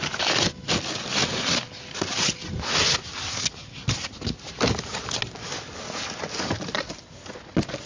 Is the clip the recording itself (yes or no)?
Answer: yes